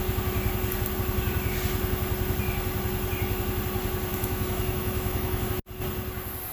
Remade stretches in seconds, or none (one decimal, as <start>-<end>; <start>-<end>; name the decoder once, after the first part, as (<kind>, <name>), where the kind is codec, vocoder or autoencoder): 4.1-5.5 (autoencoder, DAC-VAE)